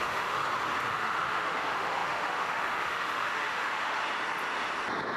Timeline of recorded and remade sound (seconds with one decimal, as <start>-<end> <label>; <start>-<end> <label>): 0.0-0.4 remade; 0.4-0.9 recorded; 0.9-4.0 remade; 4.0-5.2 recorded

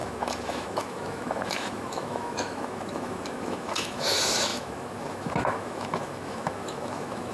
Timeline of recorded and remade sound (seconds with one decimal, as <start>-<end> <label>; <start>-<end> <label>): 0.0-7.3 remade

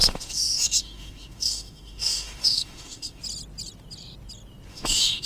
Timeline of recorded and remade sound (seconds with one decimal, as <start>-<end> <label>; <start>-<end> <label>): 0.0-3.2 remade; 3.2-4.7 recorded; 4.7-5.3 remade

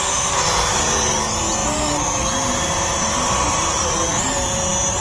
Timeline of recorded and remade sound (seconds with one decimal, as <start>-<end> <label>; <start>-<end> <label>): 0.0-5.0 recorded

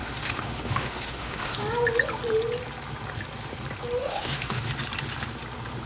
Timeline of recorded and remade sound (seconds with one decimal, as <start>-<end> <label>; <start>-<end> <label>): 0.0-1.6 remade; 1.6-4.0 recorded; 4.0-4.7 remade; 4.7-5.9 recorded

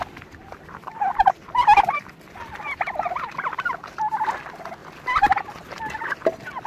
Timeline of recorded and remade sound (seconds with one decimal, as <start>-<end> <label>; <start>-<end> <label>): 0.0-6.7 recorded